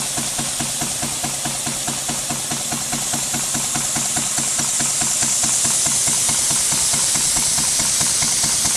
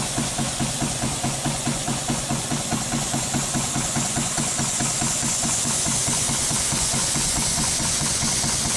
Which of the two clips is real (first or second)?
first